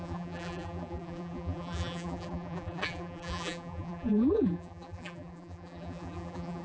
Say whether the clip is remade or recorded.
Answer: remade